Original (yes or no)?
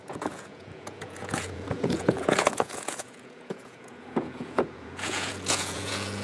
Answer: no